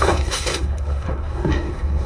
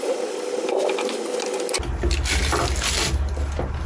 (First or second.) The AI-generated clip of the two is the first